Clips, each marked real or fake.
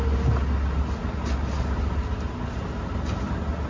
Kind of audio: real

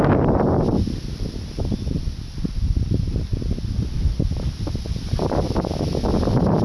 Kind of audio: real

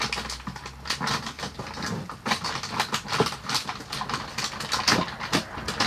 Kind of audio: real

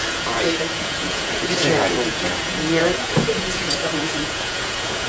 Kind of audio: fake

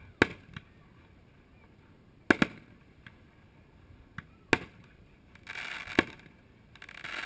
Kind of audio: real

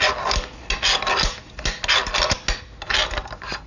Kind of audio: real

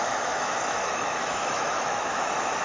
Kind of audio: fake